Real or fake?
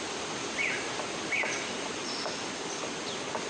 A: real